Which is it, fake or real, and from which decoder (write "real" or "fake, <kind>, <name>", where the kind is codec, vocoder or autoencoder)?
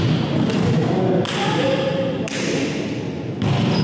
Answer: real